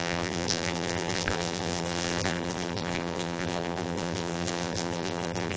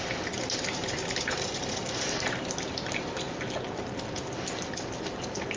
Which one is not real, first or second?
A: first